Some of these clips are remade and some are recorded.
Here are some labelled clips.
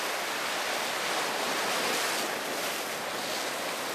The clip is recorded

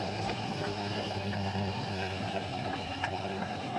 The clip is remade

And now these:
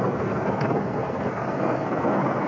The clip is remade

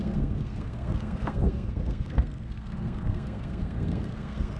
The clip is remade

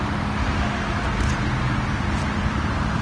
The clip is recorded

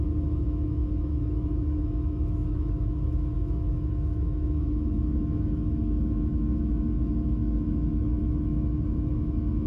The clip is remade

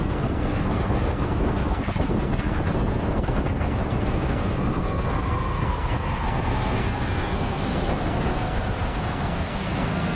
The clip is remade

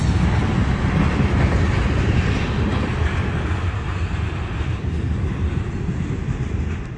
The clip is recorded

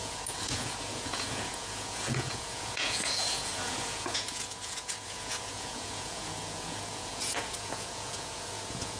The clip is remade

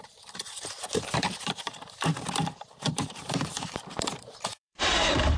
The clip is remade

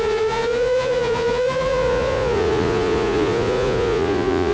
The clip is remade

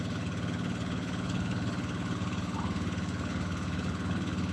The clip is remade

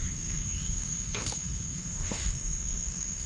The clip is remade